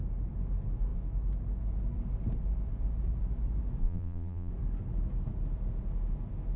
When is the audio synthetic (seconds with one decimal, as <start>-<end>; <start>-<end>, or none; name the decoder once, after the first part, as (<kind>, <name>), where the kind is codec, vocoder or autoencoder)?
3.8-4.5 (vocoder, BigVGAN v2)